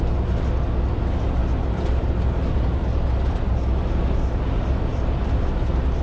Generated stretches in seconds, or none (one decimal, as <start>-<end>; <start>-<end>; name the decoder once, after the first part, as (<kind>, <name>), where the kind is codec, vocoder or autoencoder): none